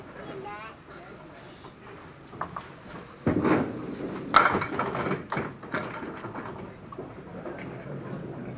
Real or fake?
real